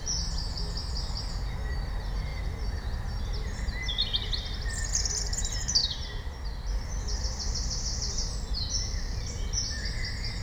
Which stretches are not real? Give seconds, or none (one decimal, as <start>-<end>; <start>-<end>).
2.3-3.2; 5.8-6.7